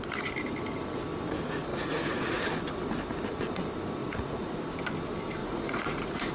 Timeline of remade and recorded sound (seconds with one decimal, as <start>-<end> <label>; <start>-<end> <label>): 0.0-1.7 recorded; 1.7-2.4 remade; 2.4-4.0 recorded; 4.0-4.6 remade; 4.6-5.4 recorded; 5.4-6.3 remade